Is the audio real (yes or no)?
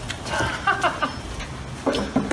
yes